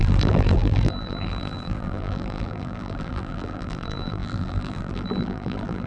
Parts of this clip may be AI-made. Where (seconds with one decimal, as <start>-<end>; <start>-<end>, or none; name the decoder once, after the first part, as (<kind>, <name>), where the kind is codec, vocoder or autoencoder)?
0.0-5.9 (vocoder, BigVGAN v2)